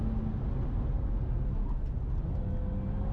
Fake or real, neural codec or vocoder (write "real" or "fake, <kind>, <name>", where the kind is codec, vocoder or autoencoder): real